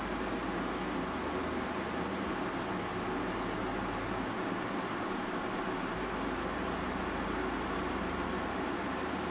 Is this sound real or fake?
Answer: real